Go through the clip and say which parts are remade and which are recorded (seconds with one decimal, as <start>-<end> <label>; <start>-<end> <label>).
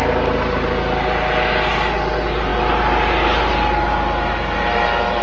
0.0-5.2 recorded